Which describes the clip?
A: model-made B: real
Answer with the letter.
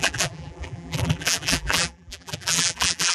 A